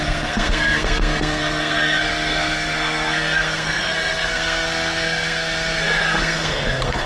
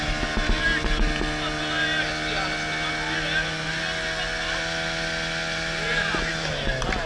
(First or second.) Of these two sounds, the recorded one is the second